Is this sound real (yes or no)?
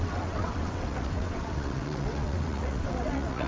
no